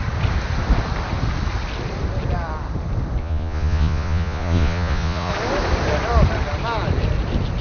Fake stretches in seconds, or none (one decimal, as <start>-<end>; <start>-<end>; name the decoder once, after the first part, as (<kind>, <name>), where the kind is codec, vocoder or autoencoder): 3.2-5.3 (vocoder, Vocos)